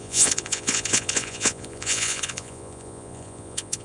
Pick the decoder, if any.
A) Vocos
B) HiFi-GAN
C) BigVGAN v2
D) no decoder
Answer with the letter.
A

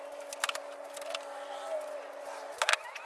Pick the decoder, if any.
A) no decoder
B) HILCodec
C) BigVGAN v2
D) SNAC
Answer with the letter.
A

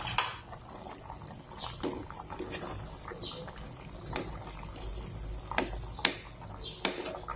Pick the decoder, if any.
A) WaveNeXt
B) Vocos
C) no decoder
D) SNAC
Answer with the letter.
C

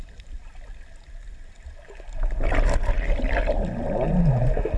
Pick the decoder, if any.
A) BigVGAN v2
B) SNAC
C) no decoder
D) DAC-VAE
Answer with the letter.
C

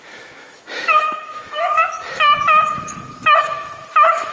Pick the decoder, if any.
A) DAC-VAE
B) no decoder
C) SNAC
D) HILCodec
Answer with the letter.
A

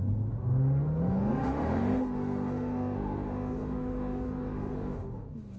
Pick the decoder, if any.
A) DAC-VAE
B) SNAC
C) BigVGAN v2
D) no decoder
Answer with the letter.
A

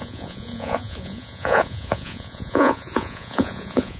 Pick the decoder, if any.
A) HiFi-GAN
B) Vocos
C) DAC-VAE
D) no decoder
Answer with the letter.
B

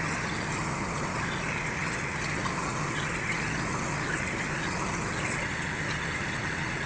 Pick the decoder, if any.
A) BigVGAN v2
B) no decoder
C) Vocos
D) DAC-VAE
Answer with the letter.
B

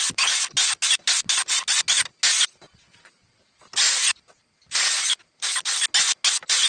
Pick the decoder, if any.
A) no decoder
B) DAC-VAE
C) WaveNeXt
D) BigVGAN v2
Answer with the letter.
A